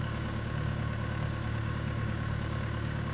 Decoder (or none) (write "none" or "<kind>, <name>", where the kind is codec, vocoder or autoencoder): codec, DAC